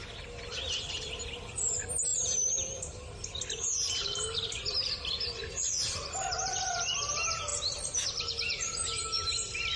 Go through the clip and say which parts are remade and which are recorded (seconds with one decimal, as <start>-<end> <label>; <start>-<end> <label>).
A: 0.0-9.8 remade